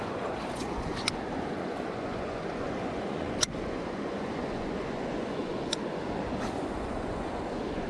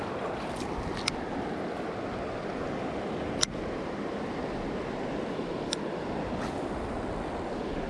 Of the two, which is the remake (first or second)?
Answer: first